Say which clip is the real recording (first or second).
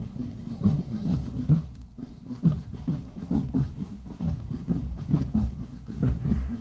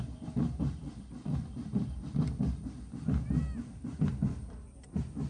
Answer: second